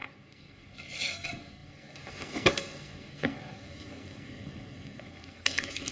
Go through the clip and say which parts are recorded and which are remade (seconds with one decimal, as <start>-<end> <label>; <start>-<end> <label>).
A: 0.0-5.9 remade